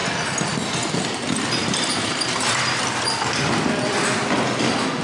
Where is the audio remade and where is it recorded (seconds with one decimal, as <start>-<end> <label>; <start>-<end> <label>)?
0.0-5.0 recorded